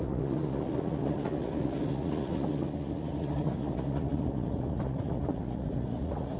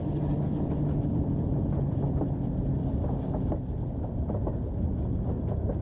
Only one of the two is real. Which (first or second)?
second